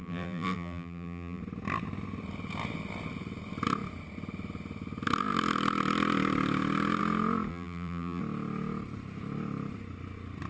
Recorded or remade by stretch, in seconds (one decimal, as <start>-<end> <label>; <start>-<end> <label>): 0.0-1.4 remade; 1.4-7.5 recorded; 7.5-8.2 remade; 8.2-10.5 recorded